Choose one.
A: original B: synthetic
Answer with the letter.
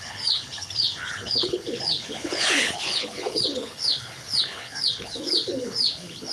B